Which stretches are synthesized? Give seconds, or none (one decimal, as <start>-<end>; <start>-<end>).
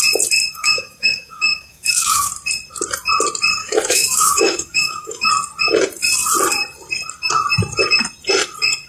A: 0.6-2.3; 3.6-5.3